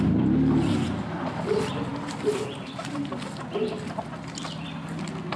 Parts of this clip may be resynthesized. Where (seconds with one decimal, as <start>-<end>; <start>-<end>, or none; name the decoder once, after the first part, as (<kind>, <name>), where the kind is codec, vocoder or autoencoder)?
1.9-3.1 (vocoder, BigVGAN v2)